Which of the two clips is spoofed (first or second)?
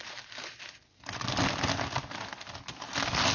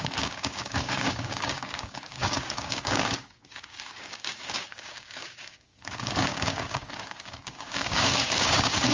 second